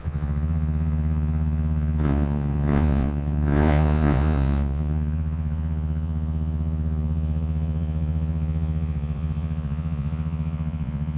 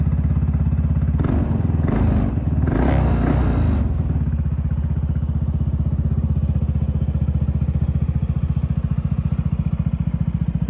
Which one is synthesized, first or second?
first